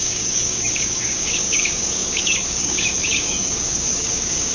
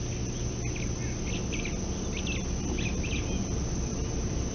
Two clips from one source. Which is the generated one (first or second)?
first